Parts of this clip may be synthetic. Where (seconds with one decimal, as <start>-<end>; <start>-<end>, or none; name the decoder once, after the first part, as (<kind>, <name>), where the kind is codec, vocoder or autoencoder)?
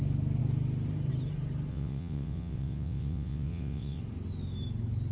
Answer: 1.7-4.0 (vocoder, WaveNeXt)